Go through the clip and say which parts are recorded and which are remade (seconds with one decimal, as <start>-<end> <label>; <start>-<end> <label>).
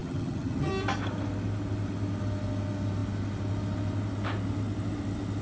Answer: 0.0-0.7 remade; 0.7-5.4 recorded